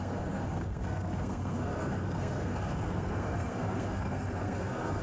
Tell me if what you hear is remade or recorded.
remade